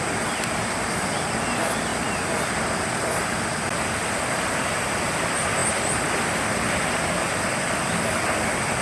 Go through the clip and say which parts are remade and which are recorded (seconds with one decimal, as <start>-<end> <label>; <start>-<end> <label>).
0.0-8.8 recorded

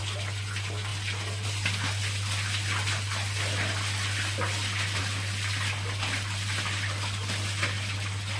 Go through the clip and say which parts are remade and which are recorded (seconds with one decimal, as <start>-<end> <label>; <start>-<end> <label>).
0.0-8.4 recorded

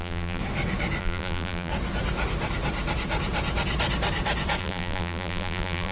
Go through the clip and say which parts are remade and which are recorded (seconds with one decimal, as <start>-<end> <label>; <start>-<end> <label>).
0.0-0.4 remade; 0.4-1.0 recorded; 1.0-1.7 remade; 1.7-4.6 recorded; 4.6-5.9 remade

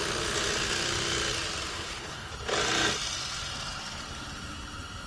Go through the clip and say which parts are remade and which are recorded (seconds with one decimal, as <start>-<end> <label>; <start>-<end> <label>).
0.0-1.7 recorded; 1.7-2.3 remade; 2.3-5.1 recorded

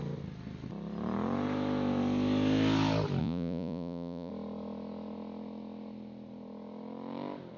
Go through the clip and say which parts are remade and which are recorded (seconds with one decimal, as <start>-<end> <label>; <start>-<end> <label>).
0.0-3.2 recorded; 3.2-4.3 remade; 4.3-7.6 recorded